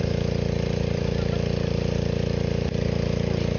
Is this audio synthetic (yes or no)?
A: no